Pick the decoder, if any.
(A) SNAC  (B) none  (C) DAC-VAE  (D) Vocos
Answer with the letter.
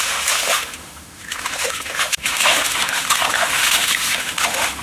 C